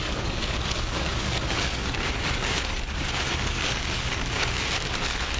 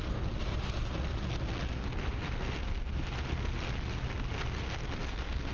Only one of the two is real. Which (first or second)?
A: second